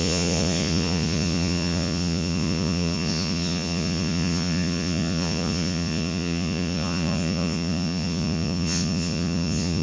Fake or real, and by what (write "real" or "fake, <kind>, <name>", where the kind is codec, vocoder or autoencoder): fake, vocoder, Vocos